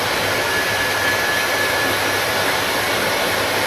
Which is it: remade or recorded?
recorded